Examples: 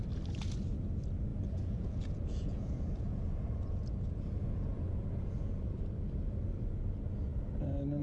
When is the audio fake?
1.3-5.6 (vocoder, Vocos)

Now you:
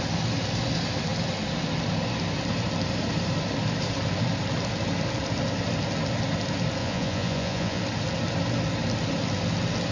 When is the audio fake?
6.8-7.8 (vocoder, Vocos)

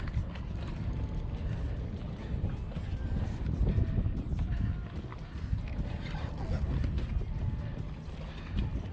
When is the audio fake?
none